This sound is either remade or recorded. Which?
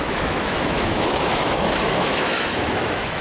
remade